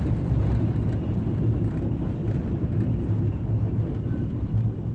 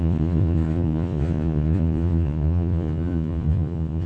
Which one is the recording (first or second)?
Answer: first